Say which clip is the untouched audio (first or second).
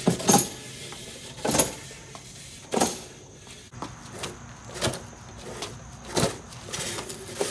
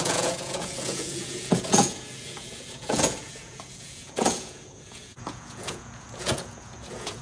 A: first